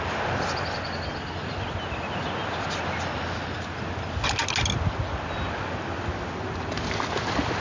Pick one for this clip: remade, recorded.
recorded